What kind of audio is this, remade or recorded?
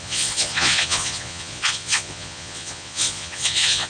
remade